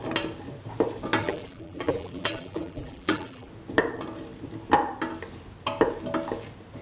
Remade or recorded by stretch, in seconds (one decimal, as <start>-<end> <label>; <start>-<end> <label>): 0.0-1.2 recorded; 1.2-3.5 remade; 3.5-6.8 recorded